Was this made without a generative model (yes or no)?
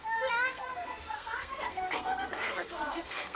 no